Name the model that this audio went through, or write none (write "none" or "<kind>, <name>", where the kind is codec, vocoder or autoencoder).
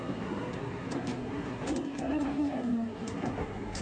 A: codec, SNAC